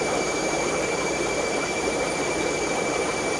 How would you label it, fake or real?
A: fake